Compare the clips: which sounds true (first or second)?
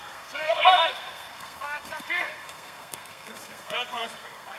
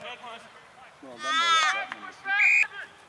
second